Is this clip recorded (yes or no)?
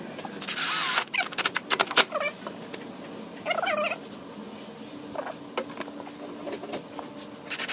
yes